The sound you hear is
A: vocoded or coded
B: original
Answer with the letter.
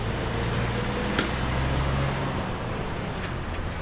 B